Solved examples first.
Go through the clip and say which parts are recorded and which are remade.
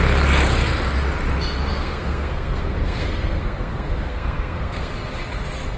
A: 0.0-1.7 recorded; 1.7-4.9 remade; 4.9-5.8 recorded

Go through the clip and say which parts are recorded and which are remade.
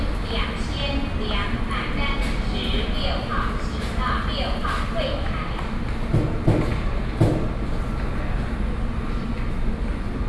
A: 0.0-10.3 recorded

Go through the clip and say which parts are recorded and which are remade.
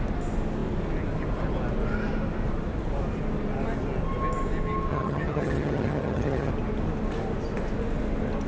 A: 0.0-4.9 recorded; 4.9-6.5 remade; 6.5-8.5 recorded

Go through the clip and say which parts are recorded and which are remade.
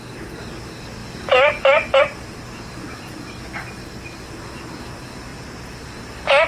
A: 0.0-6.5 recorded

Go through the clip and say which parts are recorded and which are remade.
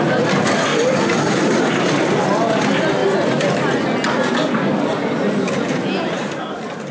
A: 0.0-6.9 recorded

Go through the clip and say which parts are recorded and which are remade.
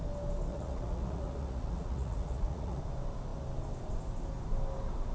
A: 0.0-0.5 recorded; 0.5-2.8 remade; 2.8-5.1 recorded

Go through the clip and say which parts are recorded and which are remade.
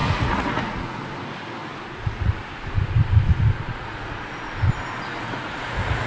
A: 0.0-1.0 remade; 1.0-1.7 recorded; 1.7-2.3 remade; 2.3-3.7 recorded; 3.7-4.5 remade; 4.5-5.1 recorded; 5.1-6.1 remade